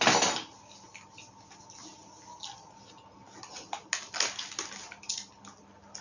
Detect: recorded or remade recorded